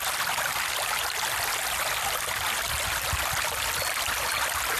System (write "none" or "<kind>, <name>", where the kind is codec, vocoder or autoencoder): none